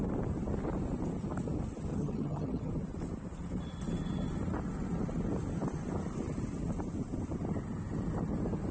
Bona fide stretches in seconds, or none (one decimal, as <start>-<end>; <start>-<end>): 0.0-1.9; 2.7-8.7